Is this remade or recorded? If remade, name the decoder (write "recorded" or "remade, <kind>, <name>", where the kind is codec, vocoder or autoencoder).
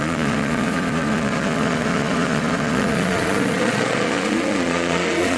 remade, vocoder, Vocos